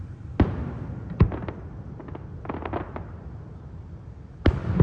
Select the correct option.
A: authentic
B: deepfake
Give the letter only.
A